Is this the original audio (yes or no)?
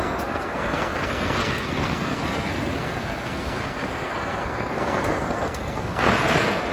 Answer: no